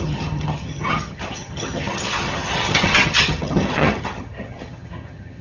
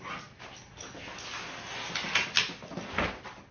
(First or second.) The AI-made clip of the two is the first